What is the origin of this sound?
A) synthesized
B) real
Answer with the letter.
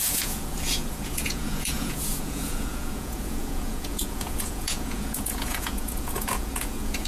A